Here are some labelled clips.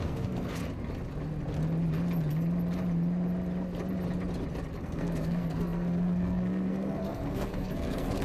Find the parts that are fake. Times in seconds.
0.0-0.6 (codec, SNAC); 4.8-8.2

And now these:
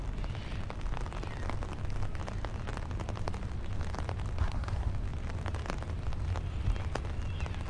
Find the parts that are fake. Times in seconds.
4.4-4.9 (codec, SNAC)

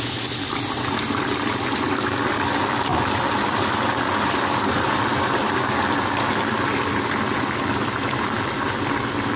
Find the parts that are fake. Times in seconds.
none

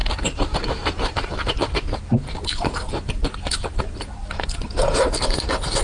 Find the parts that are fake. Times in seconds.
none

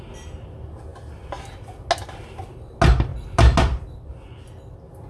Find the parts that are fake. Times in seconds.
none

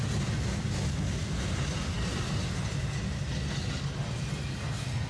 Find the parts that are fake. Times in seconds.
none